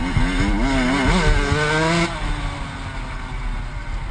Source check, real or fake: real